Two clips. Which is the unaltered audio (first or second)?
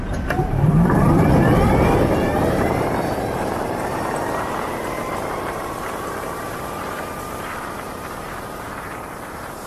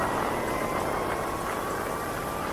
second